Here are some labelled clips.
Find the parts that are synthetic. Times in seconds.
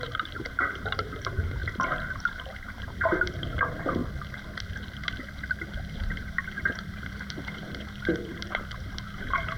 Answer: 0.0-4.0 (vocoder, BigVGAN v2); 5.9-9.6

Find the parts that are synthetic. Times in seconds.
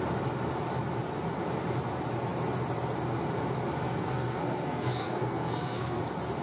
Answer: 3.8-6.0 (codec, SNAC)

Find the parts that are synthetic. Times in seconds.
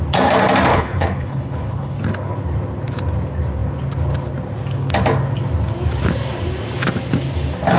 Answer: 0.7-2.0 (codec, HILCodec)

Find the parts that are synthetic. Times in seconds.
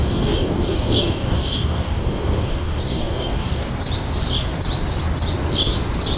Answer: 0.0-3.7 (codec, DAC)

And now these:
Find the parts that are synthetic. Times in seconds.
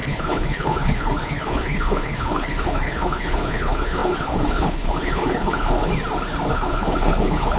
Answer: 0.0-5.9 (codec, HILCodec); 6.5-7.6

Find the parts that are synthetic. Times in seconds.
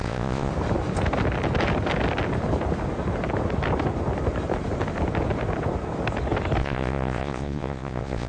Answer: 0.0-0.5 (vocoder, Vocos); 6.6-8.3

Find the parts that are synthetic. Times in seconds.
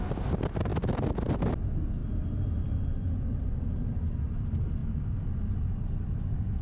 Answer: none